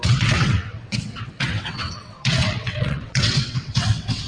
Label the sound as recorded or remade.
remade